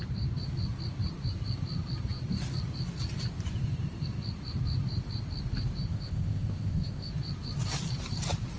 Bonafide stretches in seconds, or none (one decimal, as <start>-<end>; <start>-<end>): 0.0-5.9; 7.1-8.6